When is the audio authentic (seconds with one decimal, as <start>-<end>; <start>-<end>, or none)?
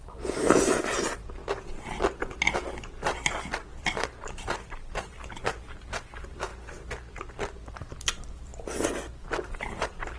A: 1.4-3.7; 6.5-7.1; 8.5-9.4